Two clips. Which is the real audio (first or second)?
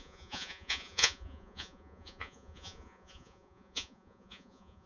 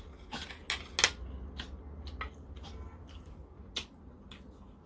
second